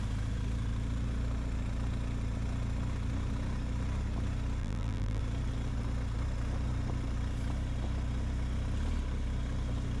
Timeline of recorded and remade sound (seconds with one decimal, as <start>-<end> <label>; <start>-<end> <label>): 0.0-4.6 recorded; 4.6-5.2 remade; 5.2-10.0 recorded